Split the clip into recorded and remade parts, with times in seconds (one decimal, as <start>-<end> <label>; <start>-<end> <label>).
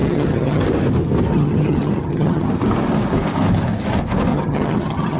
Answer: 0.0-0.6 remade; 0.6-1.3 recorded; 1.3-2.5 remade; 2.5-4.3 recorded; 4.3-5.2 remade